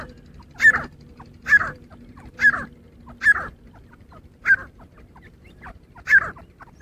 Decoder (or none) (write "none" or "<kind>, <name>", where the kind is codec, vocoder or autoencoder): vocoder, BigVGAN v2